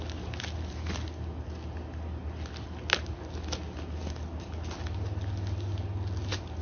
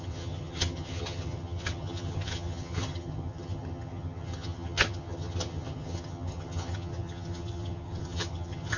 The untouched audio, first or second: first